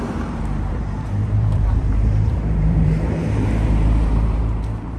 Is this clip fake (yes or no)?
yes